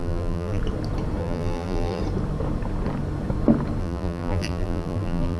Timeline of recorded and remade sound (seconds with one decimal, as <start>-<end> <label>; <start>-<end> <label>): 0.0-0.6 remade; 0.6-1.2 recorded; 1.2-2.0 remade; 2.0-3.8 recorded; 3.8-5.4 remade